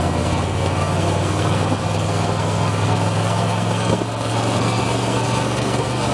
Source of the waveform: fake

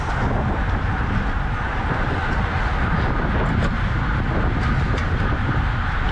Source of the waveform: real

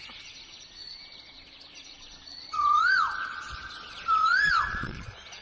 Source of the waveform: fake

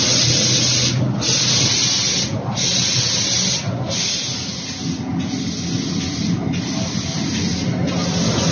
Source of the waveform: real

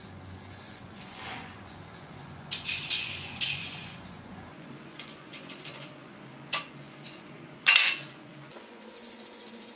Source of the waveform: fake